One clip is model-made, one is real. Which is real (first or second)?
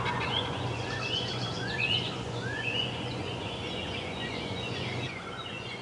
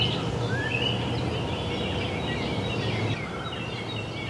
second